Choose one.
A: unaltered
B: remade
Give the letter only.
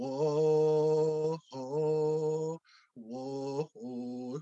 A